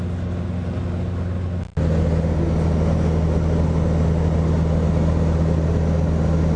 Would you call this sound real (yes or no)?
yes